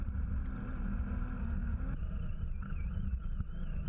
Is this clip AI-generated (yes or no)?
no